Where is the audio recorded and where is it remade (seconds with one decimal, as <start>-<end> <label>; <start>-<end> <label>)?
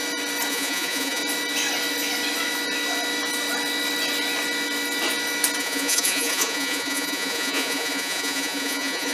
0.0-0.5 recorded; 0.5-1.2 remade; 1.2-5.6 recorded; 5.6-9.1 remade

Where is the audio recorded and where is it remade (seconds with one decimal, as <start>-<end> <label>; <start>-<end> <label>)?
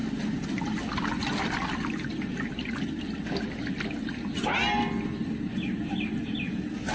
0.0-6.9 recorded